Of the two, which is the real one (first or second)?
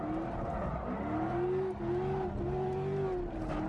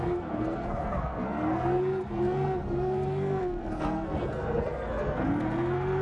first